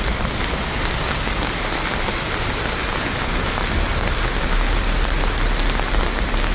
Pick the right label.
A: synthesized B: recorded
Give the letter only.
B